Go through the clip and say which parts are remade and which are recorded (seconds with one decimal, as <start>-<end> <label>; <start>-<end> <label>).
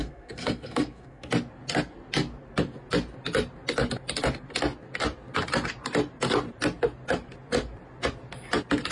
0.0-1.3 remade; 1.3-8.9 recorded